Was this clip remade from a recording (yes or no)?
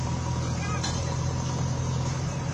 no